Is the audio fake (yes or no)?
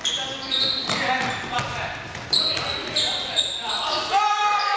no